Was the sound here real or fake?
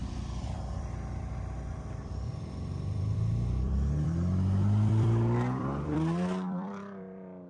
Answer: fake